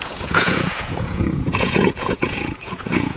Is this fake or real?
fake